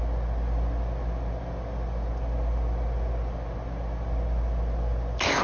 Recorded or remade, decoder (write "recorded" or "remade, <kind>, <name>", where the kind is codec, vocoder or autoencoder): recorded